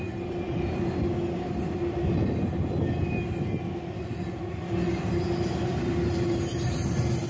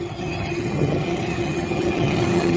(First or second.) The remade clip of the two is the second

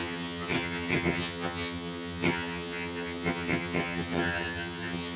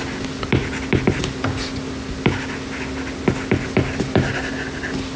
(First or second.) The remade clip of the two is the first